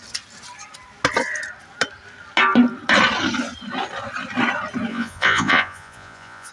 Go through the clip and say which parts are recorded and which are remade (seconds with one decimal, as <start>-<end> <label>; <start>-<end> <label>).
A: 0.0-4.9 recorded; 4.9-6.5 remade